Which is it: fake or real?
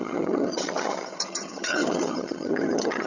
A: fake